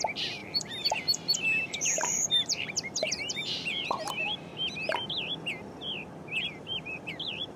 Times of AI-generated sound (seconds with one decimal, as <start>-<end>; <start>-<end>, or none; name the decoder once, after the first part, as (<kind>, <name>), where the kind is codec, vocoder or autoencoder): 0.0-4.5 (vocoder, BigVGAN v2); 6.4-7.6

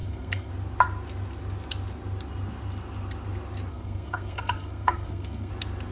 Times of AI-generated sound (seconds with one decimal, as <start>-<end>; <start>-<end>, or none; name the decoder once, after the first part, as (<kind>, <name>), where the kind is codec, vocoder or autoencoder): 0.0-0.5 (codec, SNAC); 3.7-5.5

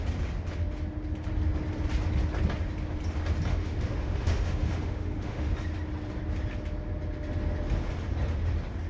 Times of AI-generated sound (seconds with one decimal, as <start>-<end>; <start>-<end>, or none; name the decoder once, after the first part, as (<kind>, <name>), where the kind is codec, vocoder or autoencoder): 3.5-5.5 (autoencoder, DAC-VAE)

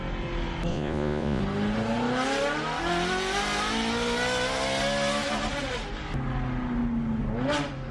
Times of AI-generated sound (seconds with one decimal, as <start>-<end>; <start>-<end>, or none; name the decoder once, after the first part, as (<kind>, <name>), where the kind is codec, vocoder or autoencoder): 0.7-1.4 (vocoder, Vocos)

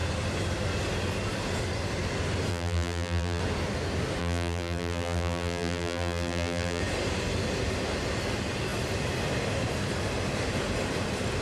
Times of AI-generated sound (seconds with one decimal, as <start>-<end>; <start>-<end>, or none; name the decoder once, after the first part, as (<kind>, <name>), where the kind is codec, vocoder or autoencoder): 2.5-3.4 (vocoder, BigVGAN v2); 4.2-6.8

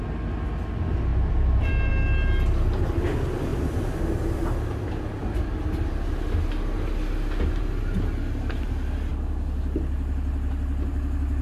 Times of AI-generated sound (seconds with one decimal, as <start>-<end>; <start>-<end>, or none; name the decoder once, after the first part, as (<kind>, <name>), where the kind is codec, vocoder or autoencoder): 1.1-1.9 (vocoder, BigVGAN v2); 3.5-4.4

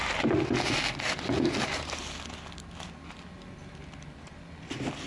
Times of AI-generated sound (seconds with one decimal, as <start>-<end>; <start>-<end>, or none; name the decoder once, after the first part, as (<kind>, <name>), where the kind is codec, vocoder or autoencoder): none

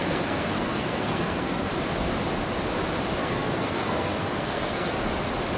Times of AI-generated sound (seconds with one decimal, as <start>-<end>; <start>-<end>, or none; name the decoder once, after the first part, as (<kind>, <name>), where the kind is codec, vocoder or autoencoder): 0.0-1.7 (codec, SNAC); 3.2-4.9